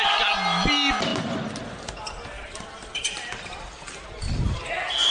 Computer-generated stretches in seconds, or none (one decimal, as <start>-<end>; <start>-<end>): none